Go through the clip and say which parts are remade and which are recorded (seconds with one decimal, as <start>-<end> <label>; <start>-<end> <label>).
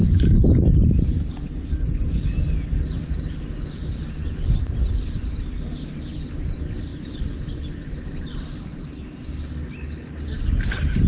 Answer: 0.0-4.4 remade; 4.4-6.9 recorded; 6.9-9.0 remade; 9.0-11.1 recorded